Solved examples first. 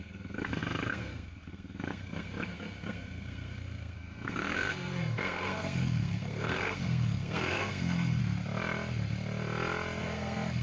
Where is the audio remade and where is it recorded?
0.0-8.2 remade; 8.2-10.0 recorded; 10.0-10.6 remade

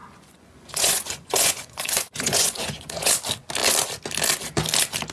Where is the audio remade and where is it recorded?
0.0-3.1 remade; 3.1-5.1 recorded